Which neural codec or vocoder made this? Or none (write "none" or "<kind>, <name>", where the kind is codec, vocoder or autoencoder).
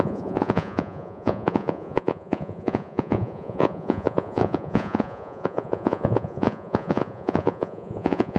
vocoder, Vocos